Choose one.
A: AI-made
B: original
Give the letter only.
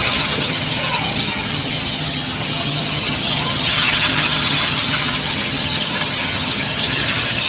A